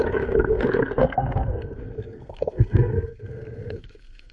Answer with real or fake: fake